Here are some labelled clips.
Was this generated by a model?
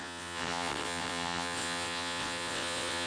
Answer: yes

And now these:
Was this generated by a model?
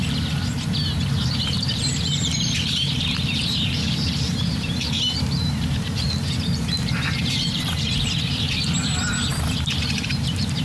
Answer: yes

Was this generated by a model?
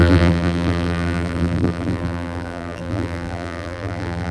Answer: yes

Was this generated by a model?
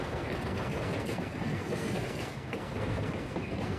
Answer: yes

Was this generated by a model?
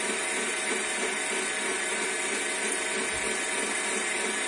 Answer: no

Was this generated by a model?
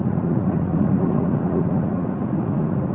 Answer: yes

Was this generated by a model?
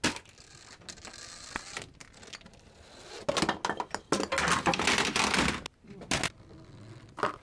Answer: no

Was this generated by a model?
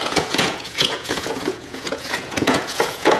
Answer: yes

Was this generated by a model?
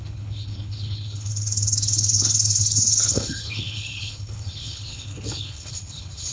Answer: yes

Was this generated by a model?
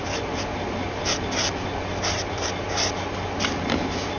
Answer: no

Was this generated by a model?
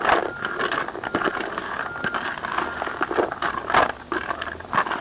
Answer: no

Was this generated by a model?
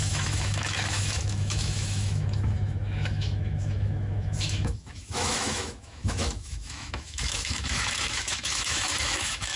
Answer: yes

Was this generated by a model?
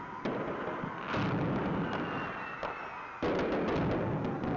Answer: no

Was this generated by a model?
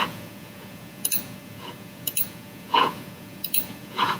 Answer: yes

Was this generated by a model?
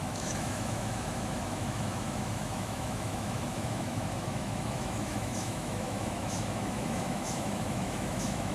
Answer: yes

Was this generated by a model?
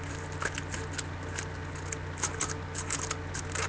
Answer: no